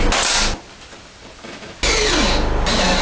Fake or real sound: real